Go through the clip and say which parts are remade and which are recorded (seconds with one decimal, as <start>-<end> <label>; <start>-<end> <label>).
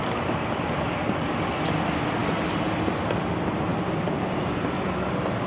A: 0.0-5.5 recorded